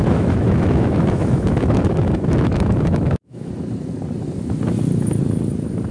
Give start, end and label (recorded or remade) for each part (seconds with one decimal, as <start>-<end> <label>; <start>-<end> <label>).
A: 0.0-3.5 remade; 3.5-5.9 recorded

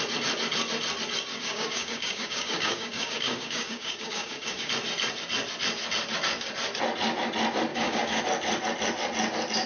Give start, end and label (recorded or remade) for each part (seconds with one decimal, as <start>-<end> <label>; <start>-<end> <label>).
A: 0.0-1.3 recorded; 1.3-4.7 remade; 4.7-7.7 recorded; 7.7-8.2 remade; 8.2-9.7 recorded

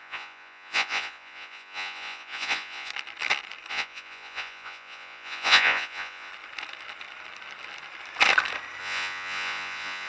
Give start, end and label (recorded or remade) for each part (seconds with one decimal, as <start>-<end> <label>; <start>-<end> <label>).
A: 0.0-2.9 remade; 2.9-3.7 recorded; 3.7-6.3 remade; 6.3-8.8 recorded; 8.8-10.1 remade

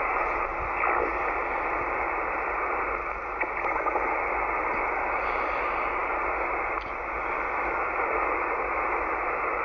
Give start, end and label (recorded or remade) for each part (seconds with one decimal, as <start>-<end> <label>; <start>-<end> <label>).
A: 0.0-9.6 recorded

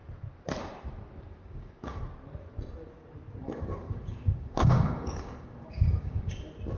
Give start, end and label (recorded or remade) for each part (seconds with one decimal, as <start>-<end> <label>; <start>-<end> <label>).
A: 0.0-1.3 recorded; 1.3-2.0 remade; 2.0-3.4 recorded; 3.4-6.3 remade; 6.3-6.8 recorded

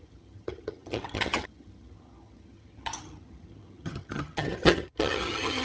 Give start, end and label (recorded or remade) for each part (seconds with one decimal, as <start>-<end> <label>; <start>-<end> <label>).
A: 0.0-5.6 remade

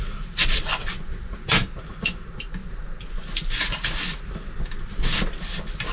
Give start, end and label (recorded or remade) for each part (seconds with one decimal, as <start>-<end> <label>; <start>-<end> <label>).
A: 0.0-5.9 recorded

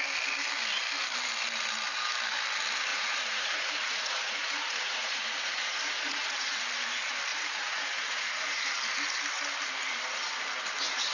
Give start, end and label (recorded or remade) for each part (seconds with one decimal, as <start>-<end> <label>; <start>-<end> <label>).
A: 0.0-2.9 recorded; 2.9-6.6 remade; 6.6-7.3 recorded; 7.3-8.6 remade; 8.6-11.1 recorded